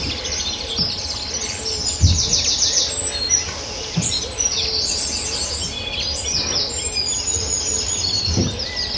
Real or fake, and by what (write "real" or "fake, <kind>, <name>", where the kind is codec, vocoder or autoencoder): real